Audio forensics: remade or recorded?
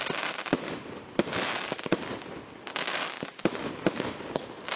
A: recorded